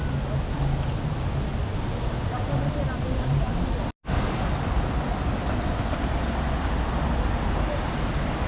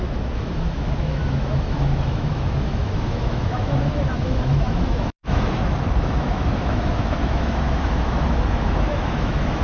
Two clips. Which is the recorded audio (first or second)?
first